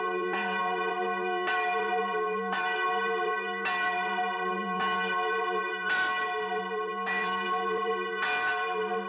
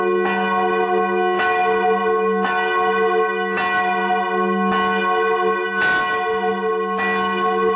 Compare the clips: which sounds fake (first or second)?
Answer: first